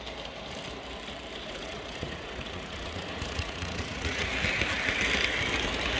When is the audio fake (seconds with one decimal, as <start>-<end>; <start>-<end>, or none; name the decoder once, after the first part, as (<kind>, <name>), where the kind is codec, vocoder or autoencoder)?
1.4-4.3 (vocoder, Vocos)